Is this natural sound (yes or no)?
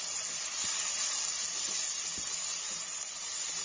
yes